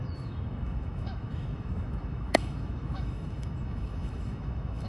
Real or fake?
fake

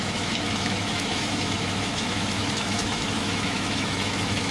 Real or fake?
fake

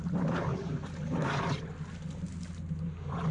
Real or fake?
real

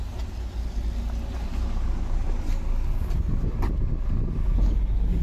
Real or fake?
real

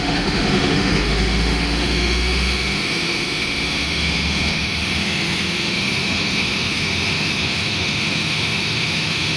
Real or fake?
fake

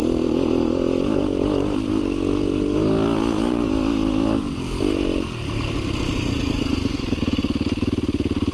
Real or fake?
real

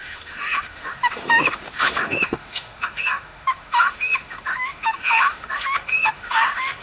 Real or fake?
fake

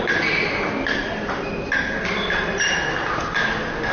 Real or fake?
real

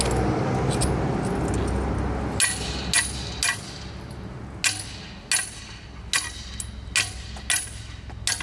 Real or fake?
real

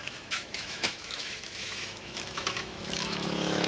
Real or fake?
fake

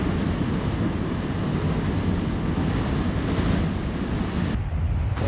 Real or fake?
real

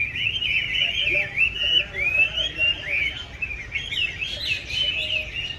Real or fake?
real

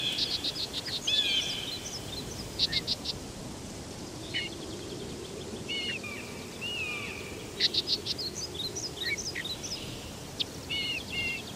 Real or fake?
real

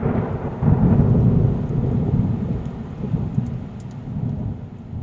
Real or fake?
real